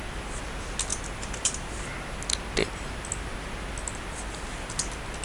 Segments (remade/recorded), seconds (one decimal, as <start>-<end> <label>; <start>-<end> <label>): 0.0-0.9 recorded; 0.9-1.9 remade; 1.9-5.2 recorded